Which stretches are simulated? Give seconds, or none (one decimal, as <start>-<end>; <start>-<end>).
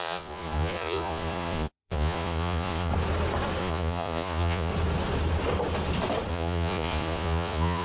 0.0-2.9; 3.6-4.7; 6.3-7.8